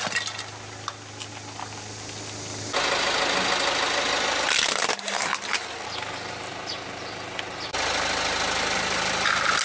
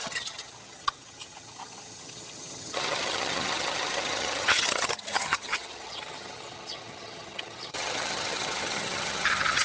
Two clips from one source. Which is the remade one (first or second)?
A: second